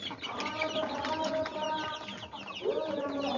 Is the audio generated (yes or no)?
no